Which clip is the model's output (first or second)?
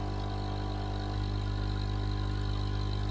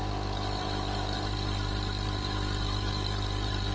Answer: second